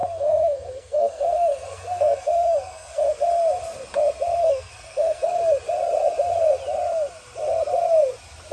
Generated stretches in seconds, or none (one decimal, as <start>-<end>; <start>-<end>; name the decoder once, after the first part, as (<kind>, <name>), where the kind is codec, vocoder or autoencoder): 0.0-3.2 (codec, SNAC); 4.4-5.4